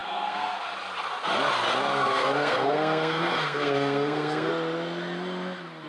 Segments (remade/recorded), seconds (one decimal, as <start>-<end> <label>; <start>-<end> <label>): 0.0-0.6 remade; 0.6-1.9 recorded; 1.9-4.5 remade; 4.5-5.9 recorded